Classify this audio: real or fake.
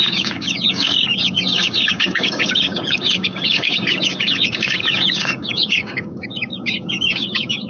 fake